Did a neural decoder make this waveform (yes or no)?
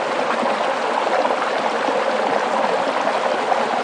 no